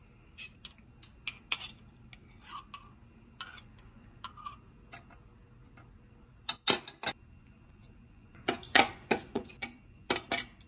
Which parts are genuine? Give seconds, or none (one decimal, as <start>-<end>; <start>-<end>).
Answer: 0.0-3.5; 4.3-7.4; 10.1-10.7